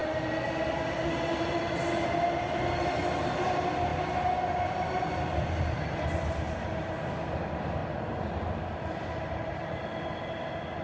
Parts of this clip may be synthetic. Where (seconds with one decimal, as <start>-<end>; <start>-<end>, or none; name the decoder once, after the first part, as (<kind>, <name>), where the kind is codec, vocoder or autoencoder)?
none